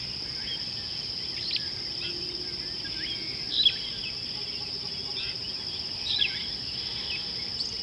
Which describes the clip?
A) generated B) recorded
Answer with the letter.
B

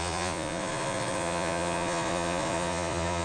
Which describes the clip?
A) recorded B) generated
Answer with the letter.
B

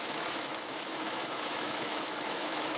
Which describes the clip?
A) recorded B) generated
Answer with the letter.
B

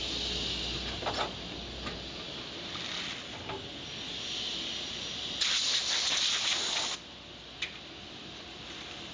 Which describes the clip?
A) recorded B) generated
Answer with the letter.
A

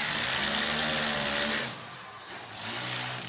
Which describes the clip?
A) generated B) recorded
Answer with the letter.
B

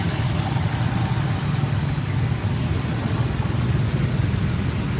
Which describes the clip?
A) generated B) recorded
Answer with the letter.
B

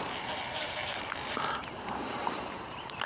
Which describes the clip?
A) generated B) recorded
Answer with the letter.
A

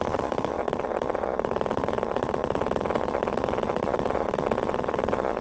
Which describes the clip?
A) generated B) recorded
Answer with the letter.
A